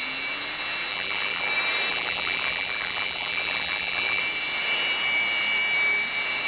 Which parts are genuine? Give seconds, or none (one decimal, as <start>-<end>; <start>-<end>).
0.0-0.9; 1.5-1.9; 4.2-6.5